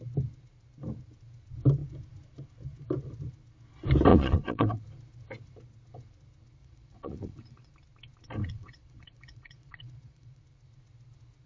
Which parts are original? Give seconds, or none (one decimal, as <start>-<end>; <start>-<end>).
0.0-4.1; 4.8-6.6; 7.7-8.4; 10.4-11.5